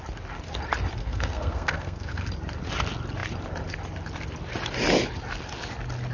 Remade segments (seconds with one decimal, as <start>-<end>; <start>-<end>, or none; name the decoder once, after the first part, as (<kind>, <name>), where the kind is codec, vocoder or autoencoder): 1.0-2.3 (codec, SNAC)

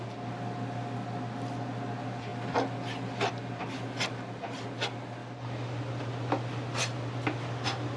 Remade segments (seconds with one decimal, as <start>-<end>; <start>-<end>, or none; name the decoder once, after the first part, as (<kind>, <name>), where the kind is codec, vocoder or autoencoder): none

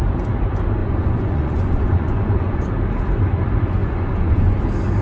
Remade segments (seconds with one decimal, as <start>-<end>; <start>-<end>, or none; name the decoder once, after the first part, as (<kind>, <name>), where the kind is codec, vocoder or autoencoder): 0.8-2.7 (vocoder, Vocos); 3.8-4.6

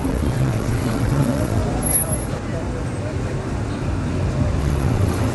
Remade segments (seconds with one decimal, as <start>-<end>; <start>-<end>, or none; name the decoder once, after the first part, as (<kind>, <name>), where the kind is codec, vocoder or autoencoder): 0.0-1.6 (vocoder, WaveNeXt); 4.6-5.3

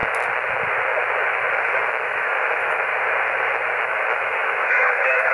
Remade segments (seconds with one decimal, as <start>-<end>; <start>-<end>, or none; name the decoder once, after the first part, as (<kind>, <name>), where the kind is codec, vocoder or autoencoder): 1.9-2.9 (autoencoder, DAC-VAE); 3.8-5.3

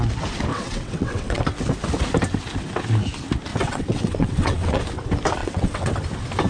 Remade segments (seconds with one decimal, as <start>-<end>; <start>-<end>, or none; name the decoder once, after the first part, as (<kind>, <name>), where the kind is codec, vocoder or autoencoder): 0.5-1.4 (vocoder, WaveNeXt); 3.5-4.8; 5.4-5.9

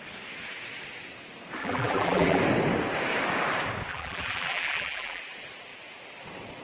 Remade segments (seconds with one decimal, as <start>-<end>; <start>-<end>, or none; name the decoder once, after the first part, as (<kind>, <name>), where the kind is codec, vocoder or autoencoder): 1.6-2.4 (vocoder, BigVGAN v2); 3.9-5.2

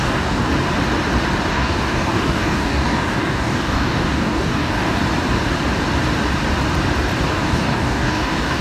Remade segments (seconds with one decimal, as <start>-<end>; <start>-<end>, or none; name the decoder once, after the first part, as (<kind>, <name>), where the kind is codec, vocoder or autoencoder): 0.0-0.5 (codec, DAC); 1.5-5.0; 7.3-8.6